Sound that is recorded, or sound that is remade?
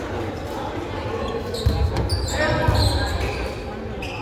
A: recorded